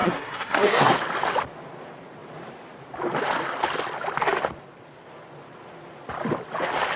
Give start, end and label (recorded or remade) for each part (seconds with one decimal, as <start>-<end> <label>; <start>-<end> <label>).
0.0-0.9 remade; 0.9-7.0 recorded

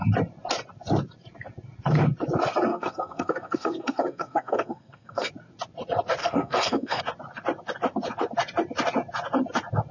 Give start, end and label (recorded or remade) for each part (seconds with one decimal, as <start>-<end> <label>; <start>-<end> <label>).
0.0-2.7 recorded; 2.7-5.3 remade; 5.3-6.2 recorded; 6.2-7.0 remade; 7.0-9.9 recorded

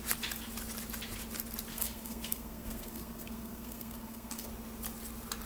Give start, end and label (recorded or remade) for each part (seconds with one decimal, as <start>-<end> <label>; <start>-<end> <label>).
0.0-1.7 recorded; 1.7-4.5 remade; 4.5-5.5 recorded

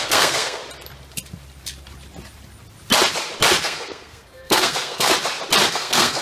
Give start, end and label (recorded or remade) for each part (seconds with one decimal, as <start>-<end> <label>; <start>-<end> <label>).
0.0-0.6 remade; 0.6-3.6 recorded; 3.6-5.1 remade; 5.1-5.7 recorded; 5.7-6.2 remade

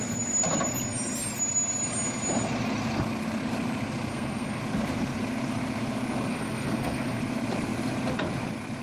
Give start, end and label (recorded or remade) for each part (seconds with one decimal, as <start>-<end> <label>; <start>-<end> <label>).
0.0-4.1 recorded; 4.1-4.6 remade; 4.6-6.3 recorded; 6.3-7.2 remade; 7.2-8.8 recorded

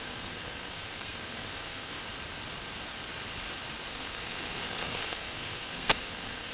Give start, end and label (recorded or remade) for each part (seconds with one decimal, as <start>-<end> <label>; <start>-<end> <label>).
0.0-2.0 remade; 2.0-3.9 recorded; 3.9-6.5 remade

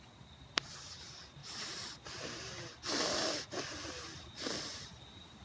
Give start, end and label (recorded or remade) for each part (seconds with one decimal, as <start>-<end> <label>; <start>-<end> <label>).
0.0-5.4 recorded